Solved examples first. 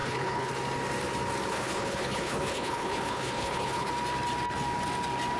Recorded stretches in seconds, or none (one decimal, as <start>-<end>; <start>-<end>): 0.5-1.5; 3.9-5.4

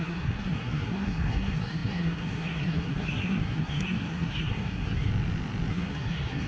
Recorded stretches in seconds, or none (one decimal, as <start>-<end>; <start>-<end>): 5.1-5.7

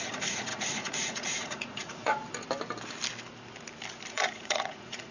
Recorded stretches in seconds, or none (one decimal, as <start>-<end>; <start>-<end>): 2.2-4.1

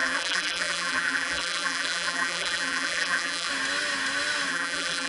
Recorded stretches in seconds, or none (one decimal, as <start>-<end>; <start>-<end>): 3.5-4.5

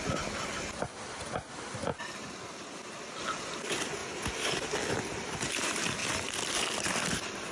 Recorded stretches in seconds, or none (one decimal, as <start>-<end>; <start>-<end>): 4.0-4.9

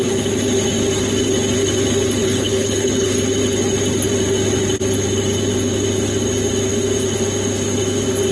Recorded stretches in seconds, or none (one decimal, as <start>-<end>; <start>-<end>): 0.0-2.2; 3.1-8.3

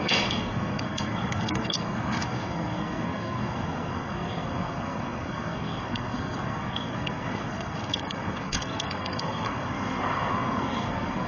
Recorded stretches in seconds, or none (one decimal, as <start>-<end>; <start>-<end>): none